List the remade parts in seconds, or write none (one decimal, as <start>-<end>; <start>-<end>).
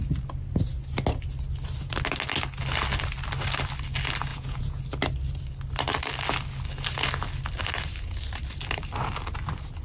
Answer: 4.3-4.8